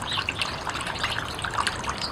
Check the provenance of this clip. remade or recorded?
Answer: remade